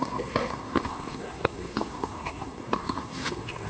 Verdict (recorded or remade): remade